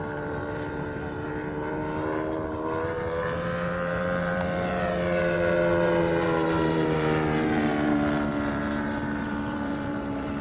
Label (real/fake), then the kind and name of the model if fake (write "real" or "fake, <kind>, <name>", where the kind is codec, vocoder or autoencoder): fake, vocoder, BigVGAN v2